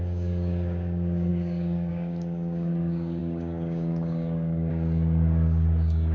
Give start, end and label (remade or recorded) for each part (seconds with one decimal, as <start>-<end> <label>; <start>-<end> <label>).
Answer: 0.0-6.1 remade